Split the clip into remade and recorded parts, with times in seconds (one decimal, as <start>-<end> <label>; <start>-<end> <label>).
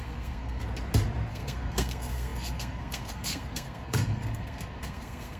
0.0-0.6 remade; 0.6-1.3 recorded; 1.3-5.4 remade